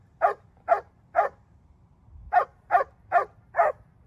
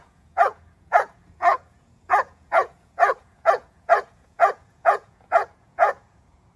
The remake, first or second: second